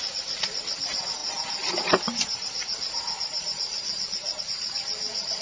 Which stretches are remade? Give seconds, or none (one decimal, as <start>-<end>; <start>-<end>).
1.2-4.4